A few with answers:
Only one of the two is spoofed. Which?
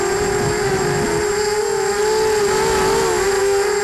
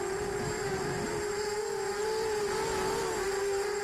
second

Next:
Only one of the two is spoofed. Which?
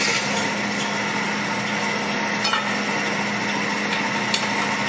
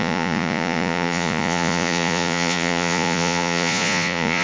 second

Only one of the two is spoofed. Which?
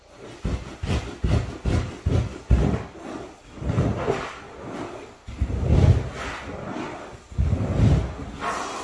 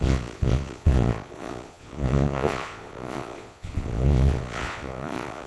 second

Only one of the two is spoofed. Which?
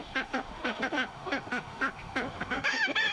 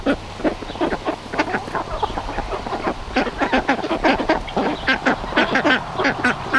first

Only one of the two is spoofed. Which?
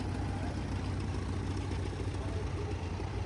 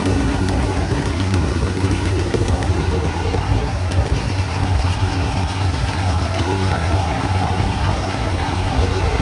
second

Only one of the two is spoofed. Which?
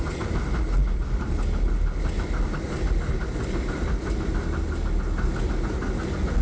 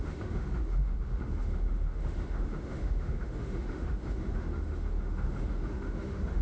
second